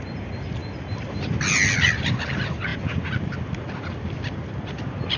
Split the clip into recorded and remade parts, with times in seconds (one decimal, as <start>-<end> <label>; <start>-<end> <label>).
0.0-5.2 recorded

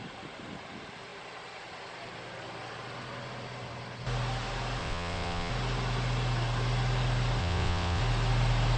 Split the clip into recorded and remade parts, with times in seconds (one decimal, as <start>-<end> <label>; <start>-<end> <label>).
0.0-4.8 recorded; 4.8-5.5 remade; 5.5-7.4 recorded; 7.4-8.0 remade; 8.0-8.8 recorded

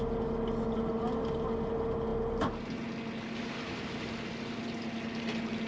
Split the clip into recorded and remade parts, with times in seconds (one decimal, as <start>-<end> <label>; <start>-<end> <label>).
0.0-5.7 recorded

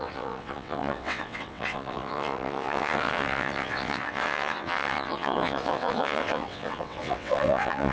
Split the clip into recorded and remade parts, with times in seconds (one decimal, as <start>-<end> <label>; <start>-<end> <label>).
0.0-7.9 remade

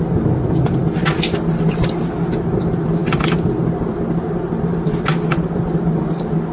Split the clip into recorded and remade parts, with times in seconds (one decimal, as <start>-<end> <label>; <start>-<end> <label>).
0.0-6.5 recorded

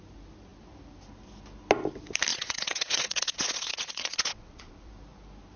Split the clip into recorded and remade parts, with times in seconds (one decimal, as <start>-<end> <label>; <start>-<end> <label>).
0.0-2.3 recorded; 2.3-4.9 remade; 4.9-5.6 recorded